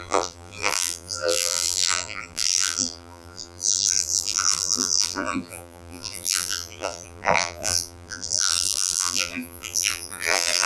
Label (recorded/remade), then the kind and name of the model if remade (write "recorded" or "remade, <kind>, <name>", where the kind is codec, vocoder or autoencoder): remade, vocoder, BigVGAN v2